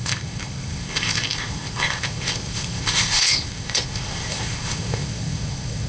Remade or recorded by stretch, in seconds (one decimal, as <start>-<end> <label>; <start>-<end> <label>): 0.0-5.9 remade